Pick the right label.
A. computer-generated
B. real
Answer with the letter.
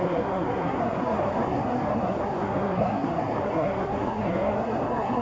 A